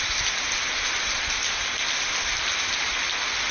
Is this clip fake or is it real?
real